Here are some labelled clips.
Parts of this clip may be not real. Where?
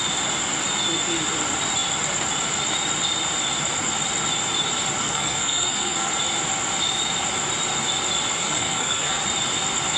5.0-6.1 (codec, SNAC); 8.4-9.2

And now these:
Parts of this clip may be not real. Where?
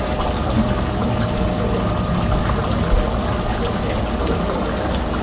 none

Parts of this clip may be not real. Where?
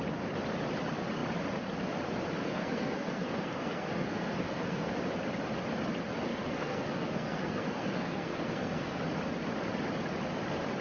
2.4-4.9 (codec, SNAC); 6.3-9.0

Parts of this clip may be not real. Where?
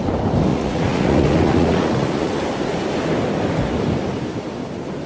0.5-2.3 (vocoder, Vocos)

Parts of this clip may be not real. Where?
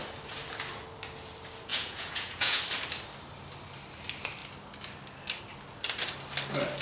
1.7-2.6 (vocoder, Vocos)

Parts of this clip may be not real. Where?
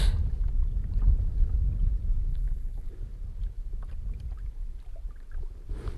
2.3-2.9 (vocoder, BigVGAN v2)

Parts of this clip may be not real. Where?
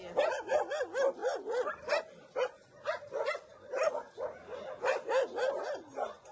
none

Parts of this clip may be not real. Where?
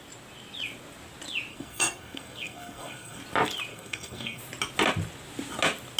1.5-3.2 (codec, SNAC); 3.7-4.4